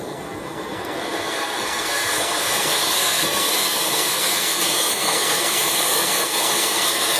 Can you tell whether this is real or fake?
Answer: fake